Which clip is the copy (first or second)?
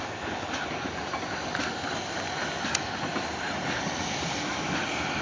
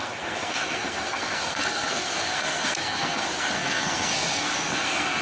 second